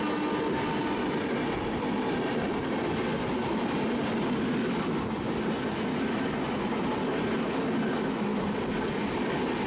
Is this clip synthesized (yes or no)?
no